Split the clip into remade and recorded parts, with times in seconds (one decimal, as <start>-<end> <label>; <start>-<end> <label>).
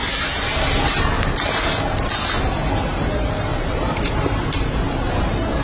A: 0.0-2.9 recorded; 2.9-5.6 remade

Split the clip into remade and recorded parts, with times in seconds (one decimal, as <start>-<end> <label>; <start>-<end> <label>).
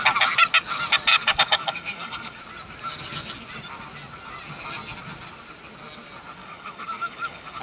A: 0.0-1.1 recorded; 1.1-2.4 remade; 2.4-6.4 recorded; 6.4-7.6 remade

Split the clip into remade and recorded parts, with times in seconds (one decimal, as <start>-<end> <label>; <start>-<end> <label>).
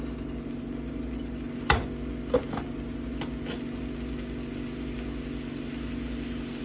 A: 0.0-6.6 recorded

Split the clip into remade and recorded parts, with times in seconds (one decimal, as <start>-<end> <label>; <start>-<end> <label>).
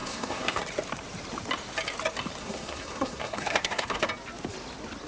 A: 0.0-0.6 remade; 0.6-2.4 recorded; 2.4-4.1 remade; 4.1-5.1 recorded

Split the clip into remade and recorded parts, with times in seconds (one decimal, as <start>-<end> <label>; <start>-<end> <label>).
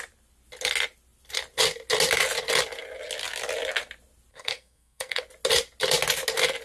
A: 0.0-4.3 recorded; 4.3-5.2 remade; 5.2-6.6 recorded